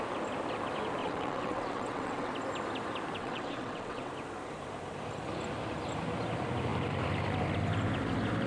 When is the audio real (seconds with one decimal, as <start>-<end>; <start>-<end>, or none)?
0.0-1.0; 2.3-3.2; 4.1-8.5